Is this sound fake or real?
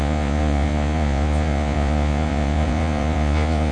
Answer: fake